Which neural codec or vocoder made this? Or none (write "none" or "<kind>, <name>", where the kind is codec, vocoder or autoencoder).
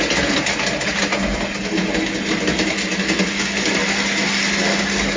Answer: none